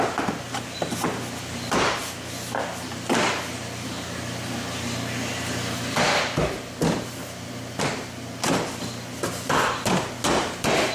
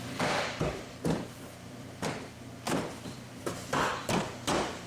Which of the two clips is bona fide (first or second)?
first